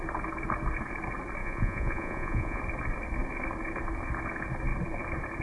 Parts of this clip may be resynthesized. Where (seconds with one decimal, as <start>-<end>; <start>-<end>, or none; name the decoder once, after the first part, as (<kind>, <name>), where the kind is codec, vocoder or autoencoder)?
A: 1.4-2.6 (vocoder, Vocos)